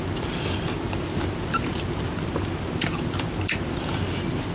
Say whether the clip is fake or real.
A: real